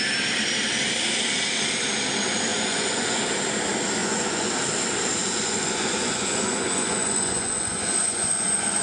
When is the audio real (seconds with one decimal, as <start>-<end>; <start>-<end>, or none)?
0.0-2.5; 3.2-4.0; 4.5-5.2